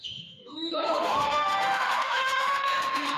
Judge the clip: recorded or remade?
remade